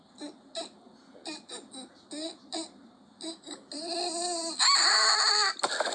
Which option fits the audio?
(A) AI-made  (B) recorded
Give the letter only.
B